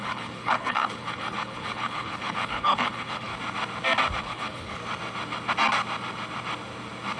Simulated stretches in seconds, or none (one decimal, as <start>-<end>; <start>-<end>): 0.0-3.3; 4.2-4.8